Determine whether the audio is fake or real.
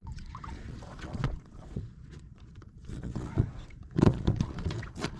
fake